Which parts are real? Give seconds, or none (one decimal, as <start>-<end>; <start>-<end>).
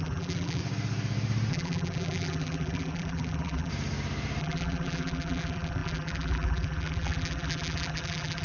0.6-1.5; 3.7-4.4